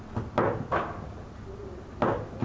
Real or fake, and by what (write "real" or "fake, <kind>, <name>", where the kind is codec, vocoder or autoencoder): real